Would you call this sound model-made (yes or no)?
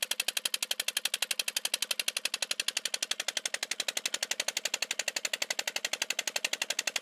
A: no